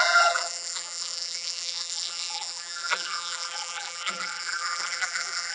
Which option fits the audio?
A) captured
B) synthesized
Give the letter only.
B